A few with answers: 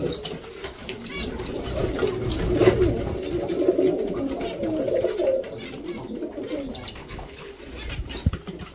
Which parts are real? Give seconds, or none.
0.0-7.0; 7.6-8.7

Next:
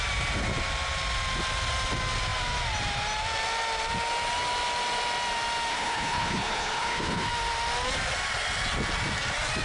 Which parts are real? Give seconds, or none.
0.0-5.7; 7.3-9.6

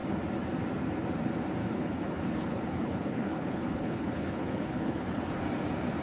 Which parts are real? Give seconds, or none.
0.0-1.6; 5.2-6.0